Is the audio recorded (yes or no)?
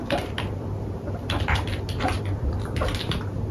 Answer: no